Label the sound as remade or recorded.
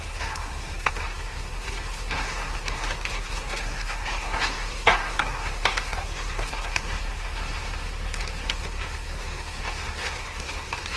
remade